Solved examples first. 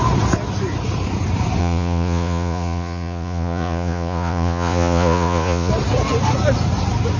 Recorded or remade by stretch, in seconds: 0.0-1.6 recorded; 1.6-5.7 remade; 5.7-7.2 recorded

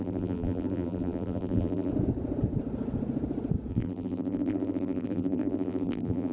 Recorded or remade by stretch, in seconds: 0.0-1.9 remade; 1.9-3.7 recorded; 3.7-6.3 remade

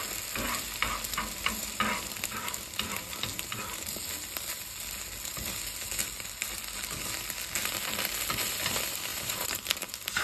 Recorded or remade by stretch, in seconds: 0.0-9.1 recorded; 9.1-10.2 remade

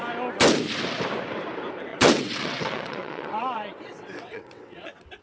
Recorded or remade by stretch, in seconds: 0.0-1.9 recorded; 1.9-5.2 remade